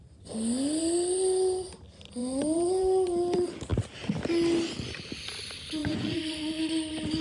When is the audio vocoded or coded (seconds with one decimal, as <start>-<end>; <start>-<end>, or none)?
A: 2.2-2.8; 5.8-6.6

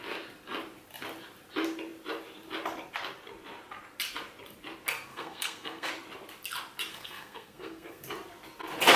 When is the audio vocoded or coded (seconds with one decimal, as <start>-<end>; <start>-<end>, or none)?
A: 5.1-5.9; 6.9-8.0

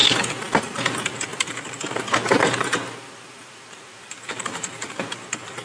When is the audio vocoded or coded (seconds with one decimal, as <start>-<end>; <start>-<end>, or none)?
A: 0.6-5.6